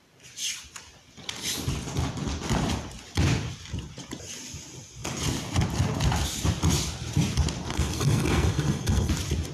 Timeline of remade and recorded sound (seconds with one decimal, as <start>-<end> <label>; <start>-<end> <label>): 0.0-7.7 recorded; 7.7-9.1 remade; 9.1-9.5 recorded